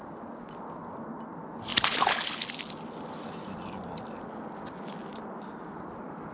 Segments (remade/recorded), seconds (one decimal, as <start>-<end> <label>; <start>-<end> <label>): 0.0-6.3 recorded